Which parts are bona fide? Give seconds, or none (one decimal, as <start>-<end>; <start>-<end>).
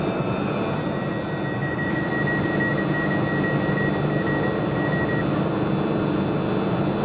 0.0-1.6; 2.1-7.0